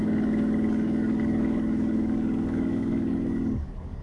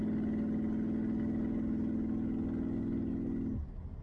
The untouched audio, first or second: second